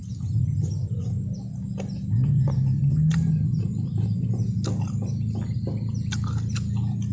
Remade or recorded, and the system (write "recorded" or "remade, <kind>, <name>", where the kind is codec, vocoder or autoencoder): recorded